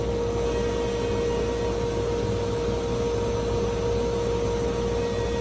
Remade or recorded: recorded